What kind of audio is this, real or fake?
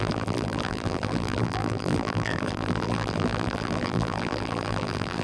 fake